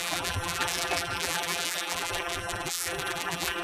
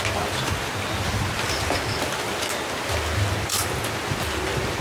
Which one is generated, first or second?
first